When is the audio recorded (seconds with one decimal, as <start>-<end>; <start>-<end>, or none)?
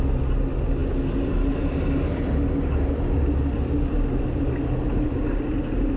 0.0-6.0